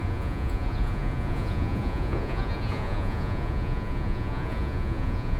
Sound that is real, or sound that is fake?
fake